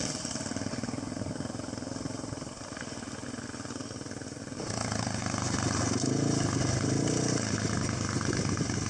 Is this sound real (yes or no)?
yes